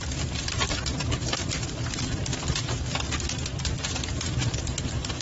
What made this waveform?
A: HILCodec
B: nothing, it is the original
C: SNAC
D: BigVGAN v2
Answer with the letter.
D